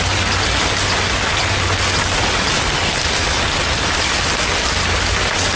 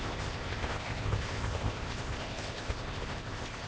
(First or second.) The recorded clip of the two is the first